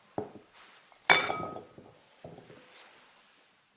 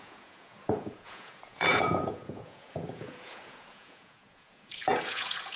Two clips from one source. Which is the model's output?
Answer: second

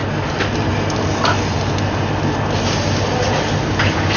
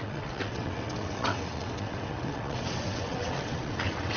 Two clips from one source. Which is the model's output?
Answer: second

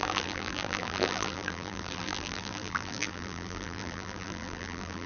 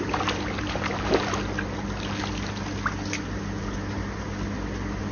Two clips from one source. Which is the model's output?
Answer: first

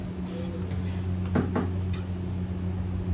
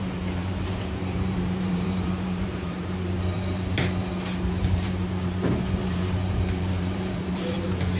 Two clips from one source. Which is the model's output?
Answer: second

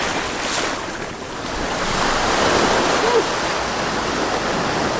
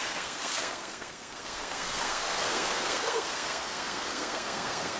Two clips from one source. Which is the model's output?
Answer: second